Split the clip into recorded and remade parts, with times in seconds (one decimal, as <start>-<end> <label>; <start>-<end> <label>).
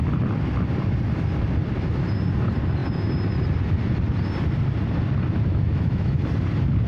0.0-5.5 recorded; 5.5-6.2 remade; 6.2-6.9 recorded